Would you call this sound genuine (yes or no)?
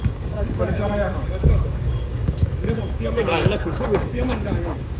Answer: no